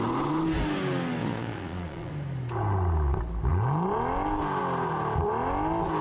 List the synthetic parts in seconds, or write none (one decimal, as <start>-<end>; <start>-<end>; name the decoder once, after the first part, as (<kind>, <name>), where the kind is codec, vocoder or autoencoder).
1.2-2.1 (vocoder, Vocos)